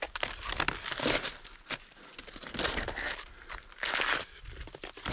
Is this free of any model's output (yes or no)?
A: yes